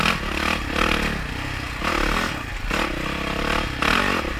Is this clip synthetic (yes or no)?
no